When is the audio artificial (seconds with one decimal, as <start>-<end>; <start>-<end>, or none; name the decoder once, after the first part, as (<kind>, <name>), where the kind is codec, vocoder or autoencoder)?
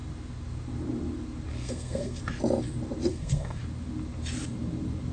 1.5-2.2 (codec, SNAC); 3.1-3.6